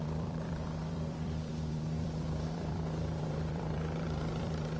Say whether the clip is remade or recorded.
remade